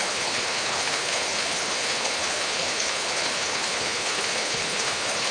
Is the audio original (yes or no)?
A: no